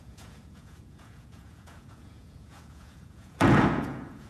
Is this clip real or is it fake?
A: fake